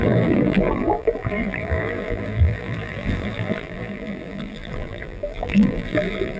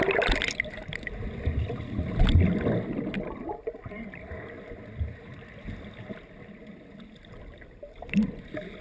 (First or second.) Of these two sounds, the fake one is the first